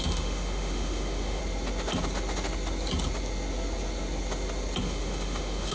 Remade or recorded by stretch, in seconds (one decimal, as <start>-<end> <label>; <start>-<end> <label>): 0.0-1.4 remade; 1.4-4.8 recorded; 4.8-5.7 remade